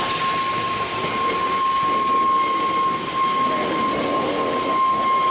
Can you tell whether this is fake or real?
real